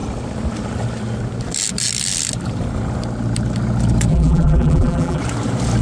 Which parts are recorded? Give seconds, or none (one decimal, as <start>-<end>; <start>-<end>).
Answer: 0.0-4.1; 5.2-5.8